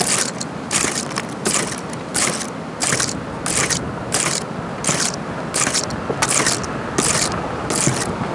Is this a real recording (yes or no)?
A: yes